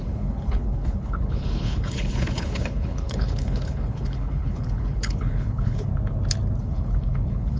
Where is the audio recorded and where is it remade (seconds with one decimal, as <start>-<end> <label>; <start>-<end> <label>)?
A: 0.0-5.9 remade; 5.9-6.6 recorded; 6.6-7.6 remade